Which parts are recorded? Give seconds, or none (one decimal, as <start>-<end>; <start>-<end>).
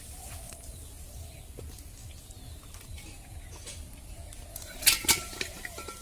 0.0-6.0